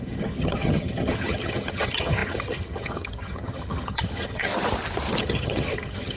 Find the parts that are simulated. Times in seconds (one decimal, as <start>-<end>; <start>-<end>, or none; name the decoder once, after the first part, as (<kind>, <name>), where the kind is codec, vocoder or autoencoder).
0.0-4.5 (vocoder, HiFi-GAN); 5.2-6.2